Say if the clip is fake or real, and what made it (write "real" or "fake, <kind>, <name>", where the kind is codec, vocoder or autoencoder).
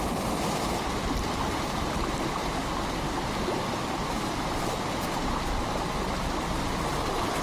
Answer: real